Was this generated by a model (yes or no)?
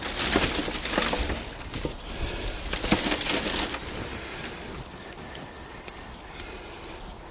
no